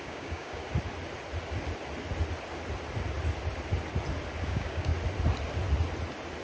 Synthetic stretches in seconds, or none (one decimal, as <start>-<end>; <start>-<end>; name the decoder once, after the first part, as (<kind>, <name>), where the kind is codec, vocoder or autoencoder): 0.0-0.6 (codec, DAC); 4.4-4.9